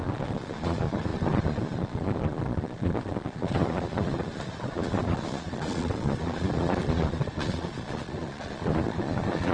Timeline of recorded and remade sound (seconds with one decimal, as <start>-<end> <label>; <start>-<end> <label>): 0.0-9.5 remade